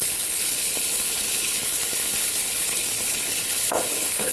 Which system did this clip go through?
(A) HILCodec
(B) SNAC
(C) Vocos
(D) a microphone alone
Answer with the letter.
A